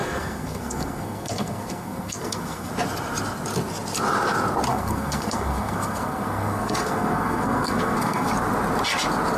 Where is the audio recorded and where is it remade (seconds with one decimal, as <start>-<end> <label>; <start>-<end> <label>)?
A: 0.0-2.7 remade; 2.7-4.7 recorded; 4.7-8.3 remade; 8.3-9.4 recorded